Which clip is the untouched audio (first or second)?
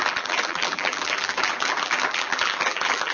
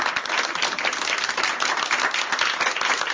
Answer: second